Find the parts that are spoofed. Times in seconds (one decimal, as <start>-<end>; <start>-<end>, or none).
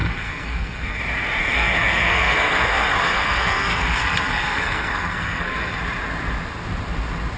0.0-1.0; 1.4-5.8